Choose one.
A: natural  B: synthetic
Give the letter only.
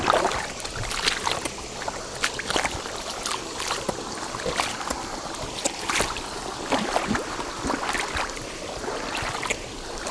A